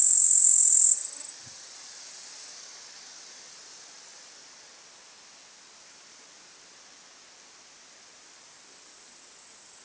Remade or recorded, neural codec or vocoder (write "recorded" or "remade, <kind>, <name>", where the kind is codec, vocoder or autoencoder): recorded